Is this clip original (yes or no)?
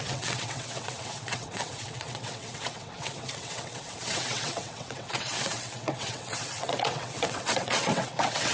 no